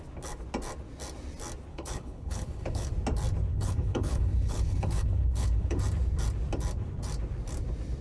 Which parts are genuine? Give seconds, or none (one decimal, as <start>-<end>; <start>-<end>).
0.0-1.7; 2.9-3.5; 5.8-8.0